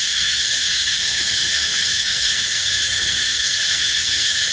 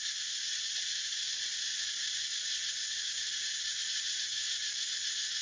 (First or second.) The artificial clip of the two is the first